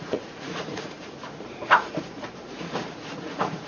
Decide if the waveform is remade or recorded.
remade